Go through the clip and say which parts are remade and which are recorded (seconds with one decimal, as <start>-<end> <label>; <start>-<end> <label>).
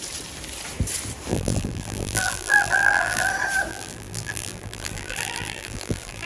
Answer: 0.0-1.3 recorded; 1.3-3.3 remade; 3.3-3.7 recorded; 3.7-6.3 remade